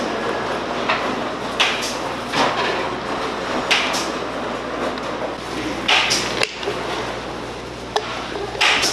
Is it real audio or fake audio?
real